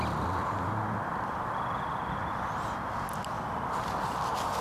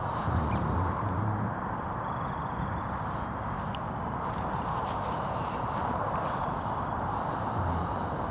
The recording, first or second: first